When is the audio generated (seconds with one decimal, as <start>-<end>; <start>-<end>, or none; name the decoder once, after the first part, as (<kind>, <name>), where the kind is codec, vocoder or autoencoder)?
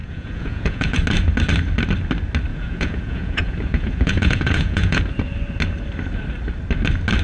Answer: 0.0-1.0 (vocoder, Vocos); 2.5-5.0